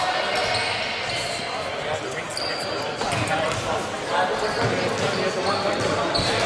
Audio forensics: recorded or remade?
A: recorded